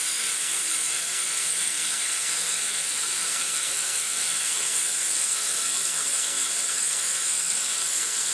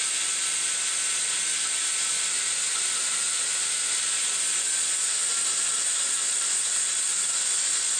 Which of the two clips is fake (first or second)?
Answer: first